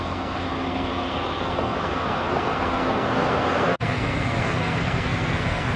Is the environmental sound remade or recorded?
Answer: remade